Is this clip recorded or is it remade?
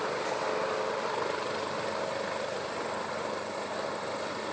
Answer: recorded